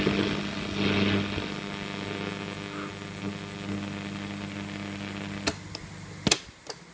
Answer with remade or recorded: recorded